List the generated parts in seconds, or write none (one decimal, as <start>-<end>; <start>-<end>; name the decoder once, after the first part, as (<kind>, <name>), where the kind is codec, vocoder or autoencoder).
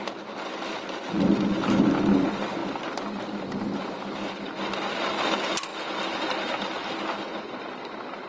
none